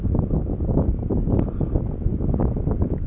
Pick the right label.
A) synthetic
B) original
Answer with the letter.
B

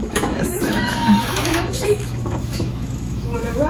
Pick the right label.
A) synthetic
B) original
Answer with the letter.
A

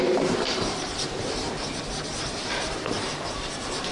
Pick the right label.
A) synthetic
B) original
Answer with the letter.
A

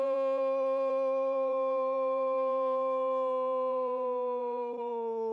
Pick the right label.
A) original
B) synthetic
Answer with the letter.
B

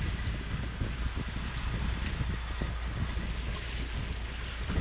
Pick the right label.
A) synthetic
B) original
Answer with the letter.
B